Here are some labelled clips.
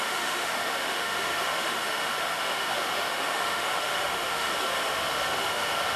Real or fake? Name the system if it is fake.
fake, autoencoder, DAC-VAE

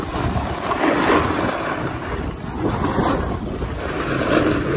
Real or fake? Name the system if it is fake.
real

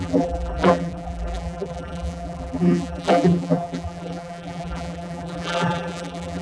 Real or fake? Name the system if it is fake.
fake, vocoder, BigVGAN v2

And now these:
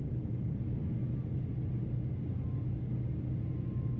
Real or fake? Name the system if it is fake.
real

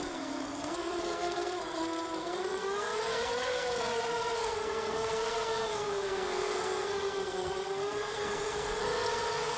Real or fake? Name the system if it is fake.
fake, codec, SNAC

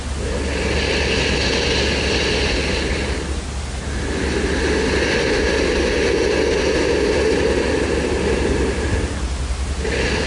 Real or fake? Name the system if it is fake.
real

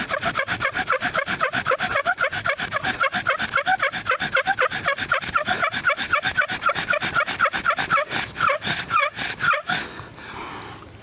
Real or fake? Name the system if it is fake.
real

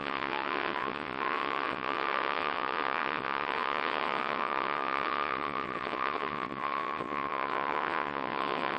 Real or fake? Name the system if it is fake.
fake, vocoder, WaveNeXt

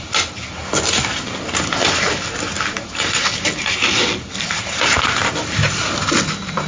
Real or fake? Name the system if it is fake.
real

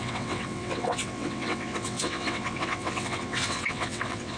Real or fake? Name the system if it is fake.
fake, vocoder, WaveNeXt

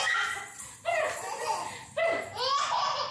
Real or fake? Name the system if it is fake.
real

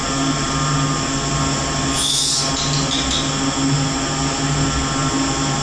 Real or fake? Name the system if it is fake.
real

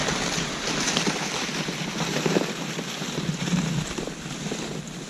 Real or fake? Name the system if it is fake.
real